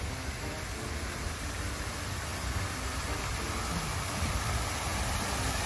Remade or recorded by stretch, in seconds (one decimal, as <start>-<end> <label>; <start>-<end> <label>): 0.0-5.7 recorded